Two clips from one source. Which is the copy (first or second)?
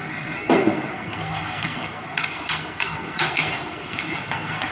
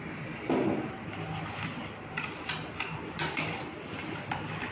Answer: first